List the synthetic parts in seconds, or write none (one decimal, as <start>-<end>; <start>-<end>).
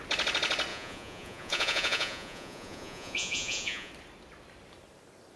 0.7-3.9